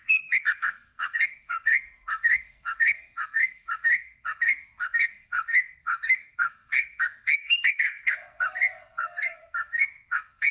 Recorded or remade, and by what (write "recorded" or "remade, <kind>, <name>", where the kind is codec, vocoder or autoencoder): remade, codec, SNAC